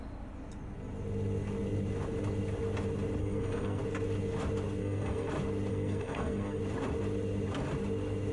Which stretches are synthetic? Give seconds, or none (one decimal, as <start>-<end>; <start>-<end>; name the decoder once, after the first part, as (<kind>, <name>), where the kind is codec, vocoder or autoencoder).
3.2-3.8 (codec, SNAC); 4.8-5.3; 5.7-6.6